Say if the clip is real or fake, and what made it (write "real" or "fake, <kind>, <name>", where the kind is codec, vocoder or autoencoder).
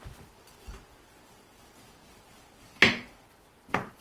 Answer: fake, vocoder, BigVGAN v2